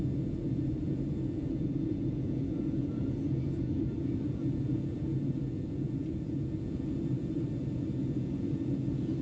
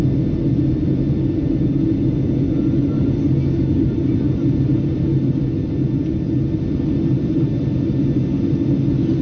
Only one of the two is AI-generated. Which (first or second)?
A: first